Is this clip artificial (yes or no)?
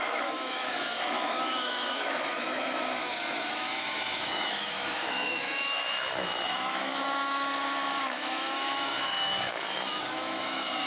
yes